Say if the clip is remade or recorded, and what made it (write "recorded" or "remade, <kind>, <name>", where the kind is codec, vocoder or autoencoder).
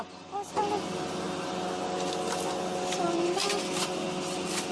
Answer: recorded